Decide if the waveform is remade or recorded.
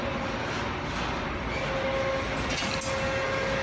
recorded